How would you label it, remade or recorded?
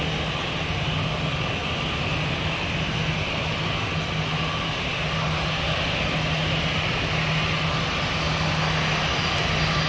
recorded